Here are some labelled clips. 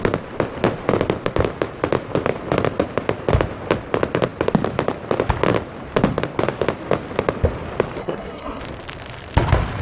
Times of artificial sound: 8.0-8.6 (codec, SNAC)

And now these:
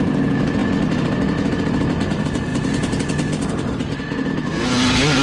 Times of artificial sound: none

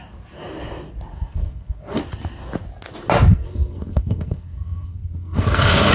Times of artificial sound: 1.1-2.0 (codec, SNAC); 3.3-5.9

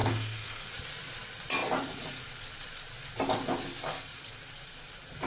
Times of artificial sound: 0.0-0.7 (codec, SNAC)

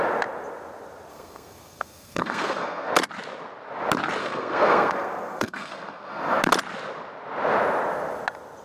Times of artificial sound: 1.1-2.9 (codec, SNAC); 4.2-6.4

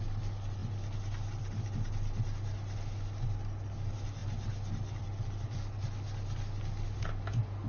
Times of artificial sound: none